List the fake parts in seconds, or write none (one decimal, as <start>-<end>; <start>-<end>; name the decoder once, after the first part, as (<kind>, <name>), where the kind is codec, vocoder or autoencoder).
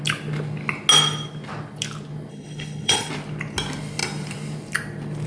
2.3-3.1 (codec, HILCodec)